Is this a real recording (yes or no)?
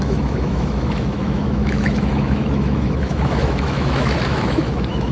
no